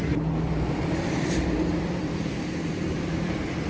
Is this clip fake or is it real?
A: fake